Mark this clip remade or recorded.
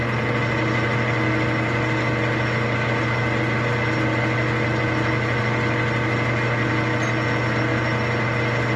recorded